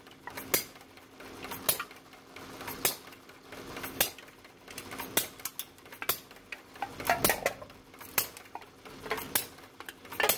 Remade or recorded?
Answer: recorded